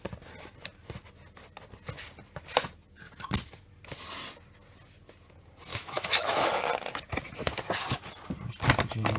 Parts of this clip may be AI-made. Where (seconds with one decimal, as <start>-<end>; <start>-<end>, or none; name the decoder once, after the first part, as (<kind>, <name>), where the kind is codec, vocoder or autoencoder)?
5.7-6.5 (autoencoder, DAC-VAE)